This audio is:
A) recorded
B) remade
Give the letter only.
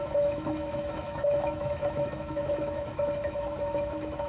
B